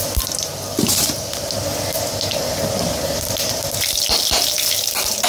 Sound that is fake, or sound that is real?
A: real